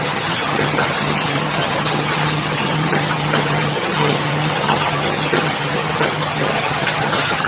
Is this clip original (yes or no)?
no